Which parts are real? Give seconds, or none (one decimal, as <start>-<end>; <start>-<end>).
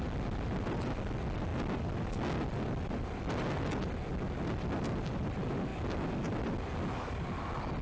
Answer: 0.0-7.8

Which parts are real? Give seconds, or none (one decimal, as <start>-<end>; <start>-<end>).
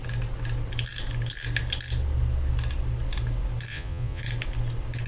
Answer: 0.0-3.7; 4.2-5.1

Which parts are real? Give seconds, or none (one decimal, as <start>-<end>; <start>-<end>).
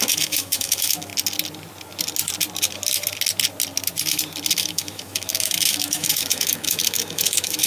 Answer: 1.1-4.5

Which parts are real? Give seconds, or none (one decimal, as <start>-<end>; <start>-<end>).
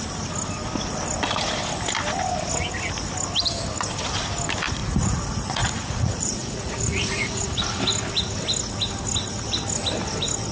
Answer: 0.0-4.8; 7.8-10.5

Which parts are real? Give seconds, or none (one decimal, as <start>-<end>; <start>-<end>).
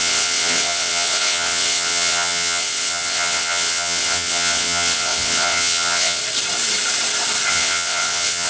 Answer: 6.2-7.5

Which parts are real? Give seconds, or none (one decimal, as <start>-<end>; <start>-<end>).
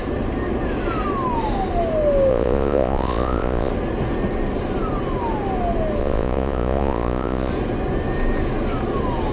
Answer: 0.0-2.3; 3.7-6.0; 7.5-9.3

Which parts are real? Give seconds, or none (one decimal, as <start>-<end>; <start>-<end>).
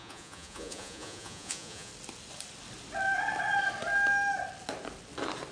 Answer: 1.9-5.5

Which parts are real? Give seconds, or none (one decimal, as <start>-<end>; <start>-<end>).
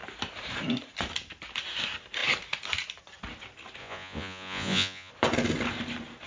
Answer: 0.0-3.8; 5.1-6.3